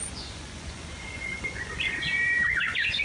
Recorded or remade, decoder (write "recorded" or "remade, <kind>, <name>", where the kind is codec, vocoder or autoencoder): remade, vocoder, Vocos